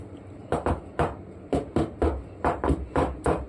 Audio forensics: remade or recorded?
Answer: recorded